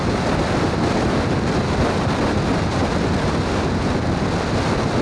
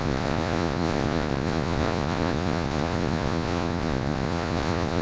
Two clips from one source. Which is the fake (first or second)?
second